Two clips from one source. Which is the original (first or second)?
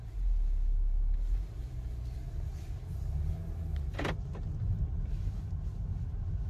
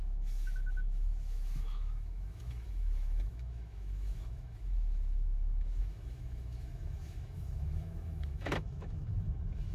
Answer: first